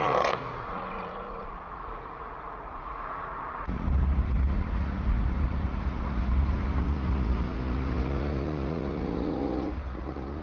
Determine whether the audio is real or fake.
fake